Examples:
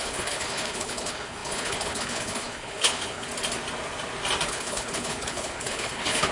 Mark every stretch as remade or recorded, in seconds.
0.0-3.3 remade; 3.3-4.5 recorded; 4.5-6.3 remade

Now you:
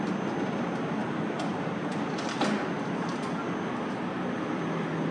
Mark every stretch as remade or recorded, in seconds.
0.0-5.1 recorded

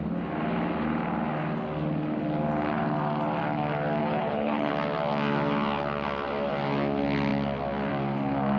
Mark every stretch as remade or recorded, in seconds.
0.0-4.0 recorded; 4.0-4.7 remade; 4.7-8.6 recorded

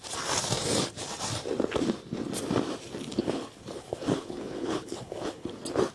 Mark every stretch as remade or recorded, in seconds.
0.0-3.2 recorded; 3.2-5.5 remade; 5.5-5.9 recorded

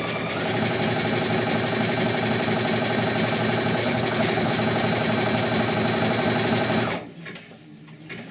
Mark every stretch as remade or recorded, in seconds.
0.0-3.8 recorded; 3.8-4.5 remade; 4.5-8.3 recorded

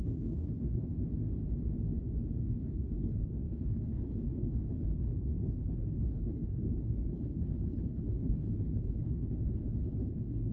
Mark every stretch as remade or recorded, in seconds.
0.0-1.0 remade; 1.0-2.4 recorded; 2.4-10.5 remade

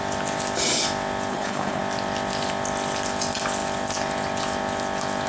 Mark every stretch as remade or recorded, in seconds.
0.0-1.3 recorded; 1.3-1.8 remade; 1.8-5.3 recorded